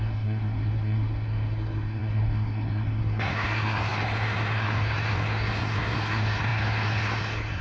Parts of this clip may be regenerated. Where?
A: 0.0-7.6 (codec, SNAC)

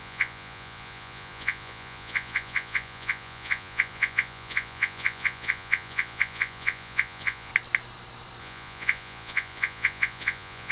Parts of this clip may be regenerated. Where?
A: 0.0-7.5 (vocoder, Vocos); 8.4-10.7

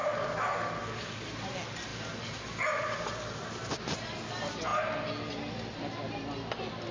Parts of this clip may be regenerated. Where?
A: none

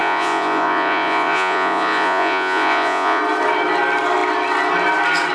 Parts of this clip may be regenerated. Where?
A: 0.0-3.2 (vocoder, Vocos)